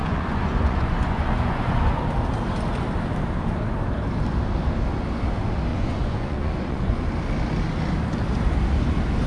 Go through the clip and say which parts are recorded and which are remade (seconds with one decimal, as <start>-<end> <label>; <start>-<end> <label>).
0.0-2.0 remade; 2.0-5.7 recorded; 5.7-7.1 remade; 7.1-9.3 recorded